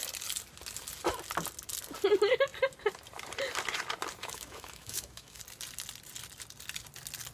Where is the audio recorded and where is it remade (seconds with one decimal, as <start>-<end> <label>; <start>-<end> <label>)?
0.0-4.2 recorded; 4.2-5.4 remade; 5.4-7.3 recorded